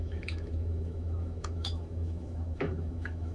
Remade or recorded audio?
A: remade